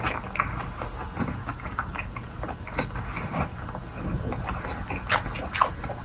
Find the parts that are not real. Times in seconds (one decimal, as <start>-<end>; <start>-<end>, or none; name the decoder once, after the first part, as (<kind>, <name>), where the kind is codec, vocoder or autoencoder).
1.4-2.1 (codec, DAC)